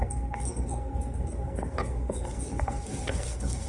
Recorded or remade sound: remade